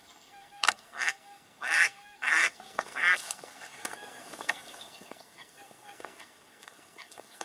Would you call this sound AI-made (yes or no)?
yes